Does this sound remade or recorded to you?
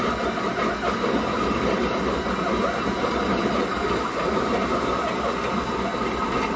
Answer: recorded